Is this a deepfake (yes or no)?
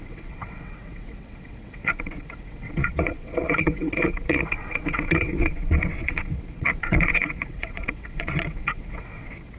yes